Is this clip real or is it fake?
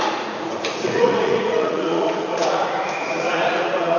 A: fake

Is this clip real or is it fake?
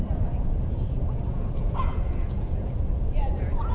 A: fake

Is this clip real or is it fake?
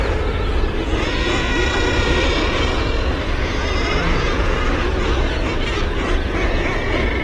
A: fake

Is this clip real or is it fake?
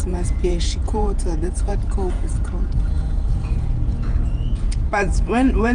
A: fake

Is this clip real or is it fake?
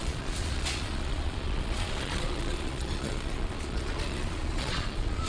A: fake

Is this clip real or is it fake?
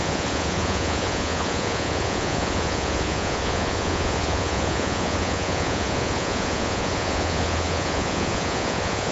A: fake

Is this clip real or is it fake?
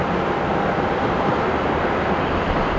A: real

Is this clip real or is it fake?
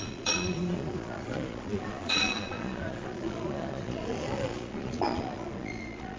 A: fake